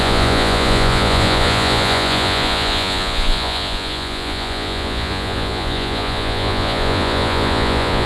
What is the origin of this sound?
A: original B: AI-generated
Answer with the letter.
B